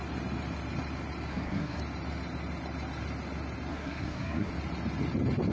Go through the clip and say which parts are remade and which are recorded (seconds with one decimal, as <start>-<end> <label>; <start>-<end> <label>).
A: 0.0-1.3 recorded; 1.3-1.8 remade; 1.8-3.7 recorded; 3.7-4.5 remade; 4.5-5.5 recorded